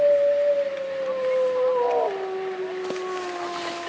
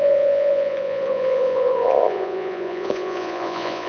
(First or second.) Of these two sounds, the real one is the first